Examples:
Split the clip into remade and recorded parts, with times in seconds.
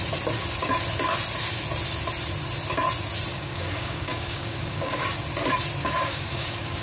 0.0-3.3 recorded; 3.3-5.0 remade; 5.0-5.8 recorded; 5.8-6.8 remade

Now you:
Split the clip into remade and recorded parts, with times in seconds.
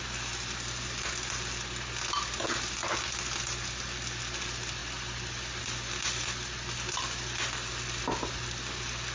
0.0-9.1 recorded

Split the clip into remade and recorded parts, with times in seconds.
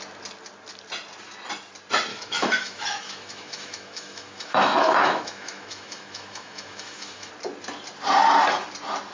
0.0-2.1 recorded; 2.1-7.3 remade; 7.3-9.1 recorded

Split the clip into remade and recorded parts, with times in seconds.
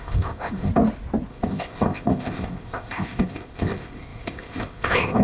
0.0-0.7 remade; 0.7-1.3 recorded; 1.3-5.2 remade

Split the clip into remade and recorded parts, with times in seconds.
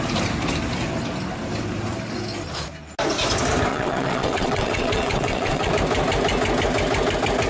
0.0-3.7 recorded; 3.7-5.7 remade; 5.7-7.5 recorded